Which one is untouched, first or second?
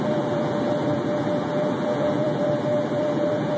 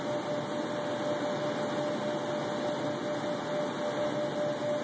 second